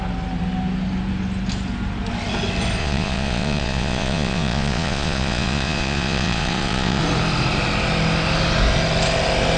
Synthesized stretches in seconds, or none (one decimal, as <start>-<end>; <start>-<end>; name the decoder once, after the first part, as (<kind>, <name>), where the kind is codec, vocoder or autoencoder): 2.8-7.0 (vocoder, Vocos)